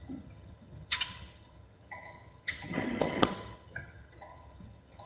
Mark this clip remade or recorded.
remade